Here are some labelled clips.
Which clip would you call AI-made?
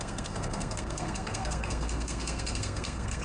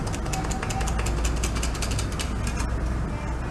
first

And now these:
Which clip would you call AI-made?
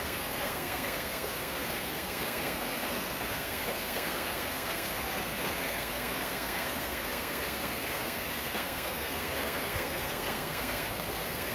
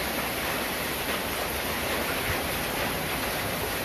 first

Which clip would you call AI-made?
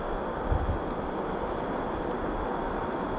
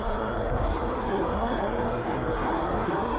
second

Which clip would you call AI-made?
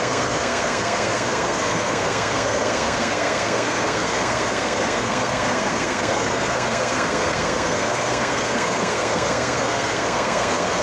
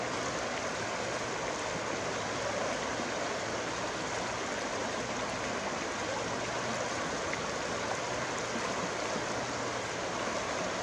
first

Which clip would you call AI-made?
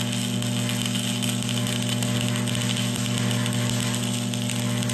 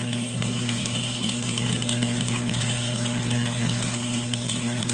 second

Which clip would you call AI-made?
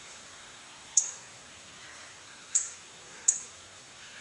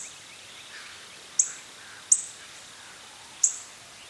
first